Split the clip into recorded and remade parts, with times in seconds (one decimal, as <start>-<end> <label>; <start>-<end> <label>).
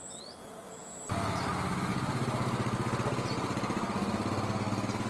0.0-5.1 recorded